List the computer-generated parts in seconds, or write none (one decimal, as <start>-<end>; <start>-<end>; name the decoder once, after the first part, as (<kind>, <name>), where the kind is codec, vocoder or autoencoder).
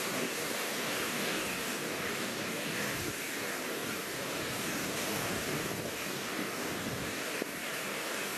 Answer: 0.0-8.4 (codec, DAC)